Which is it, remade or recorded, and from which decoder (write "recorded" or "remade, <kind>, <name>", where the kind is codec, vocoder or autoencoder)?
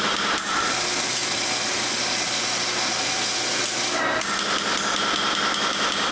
recorded